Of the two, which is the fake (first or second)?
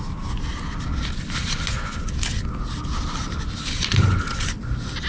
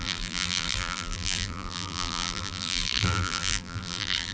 second